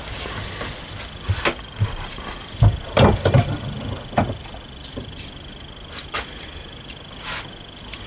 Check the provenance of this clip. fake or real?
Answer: real